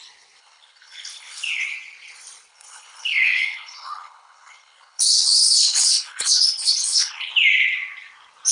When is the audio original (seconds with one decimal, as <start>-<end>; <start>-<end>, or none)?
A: 0.0-0.4; 1.6-2.5; 7.3-8.5

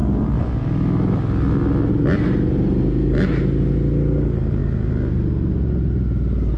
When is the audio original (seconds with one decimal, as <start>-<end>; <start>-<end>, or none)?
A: 0.0-6.6

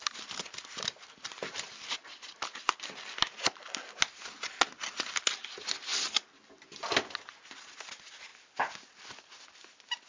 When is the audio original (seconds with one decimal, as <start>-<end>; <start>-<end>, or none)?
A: 0.0-10.1

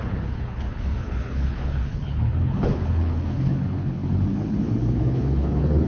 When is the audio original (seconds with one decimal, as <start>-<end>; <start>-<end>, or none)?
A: none

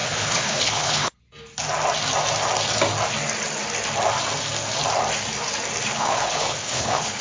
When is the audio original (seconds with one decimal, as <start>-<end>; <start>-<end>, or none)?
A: 1.2-5.9

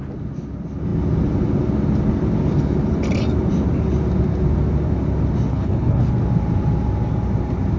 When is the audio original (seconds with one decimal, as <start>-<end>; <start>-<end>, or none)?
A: 0.0-5.5; 6.1-7.8

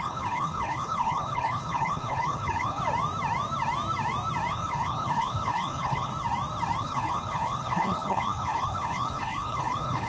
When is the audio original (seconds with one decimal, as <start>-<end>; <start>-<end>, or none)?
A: 2.8-4.5; 6.1-6.8

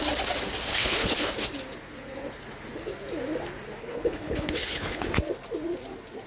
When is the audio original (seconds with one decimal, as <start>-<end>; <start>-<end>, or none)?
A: 0.0-0.7; 1.3-3.8; 5.1-6.3